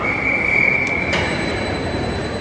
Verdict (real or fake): fake